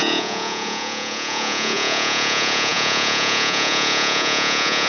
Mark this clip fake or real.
fake